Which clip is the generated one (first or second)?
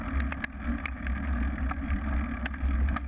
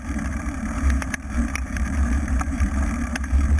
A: second